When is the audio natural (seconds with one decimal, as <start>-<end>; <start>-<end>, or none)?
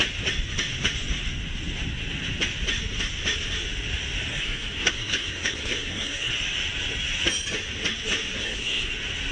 0.0-4.3; 6.3-8.4; 8.9-9.3